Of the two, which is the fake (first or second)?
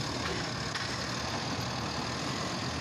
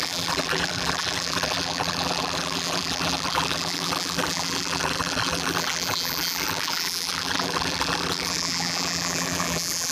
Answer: second